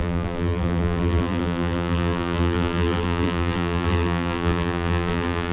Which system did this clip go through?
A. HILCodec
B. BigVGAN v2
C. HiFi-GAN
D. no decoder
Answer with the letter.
B